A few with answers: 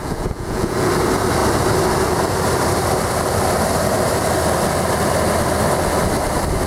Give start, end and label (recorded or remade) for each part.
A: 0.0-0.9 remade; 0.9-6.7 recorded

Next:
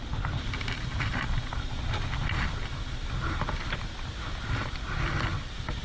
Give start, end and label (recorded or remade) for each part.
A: 0.0-5.8 recorded